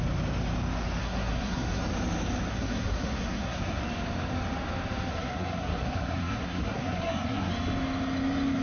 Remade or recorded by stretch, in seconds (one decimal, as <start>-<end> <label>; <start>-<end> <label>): 0.0-1.0 recorded; 1.0-1.8 remade; 1.8-2.5 recorded; 2.5-3.8 remade; 3.8-5.1 recorded; 5.1-7.5 remade; 7.5-8.6 recorded